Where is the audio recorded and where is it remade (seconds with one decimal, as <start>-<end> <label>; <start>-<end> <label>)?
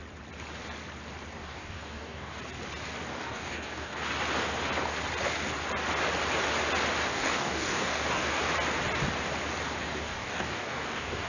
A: 0.0-1.4 recorded; 1.4-2.4 remade; 2.4-3.1 recorded; 3.1-4.0 remade; 4.0-7.1 recorded; 7.1-8.4 remade; 8.4-9.8 recorded; 9.8-11.3 remade